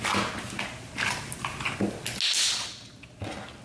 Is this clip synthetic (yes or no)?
no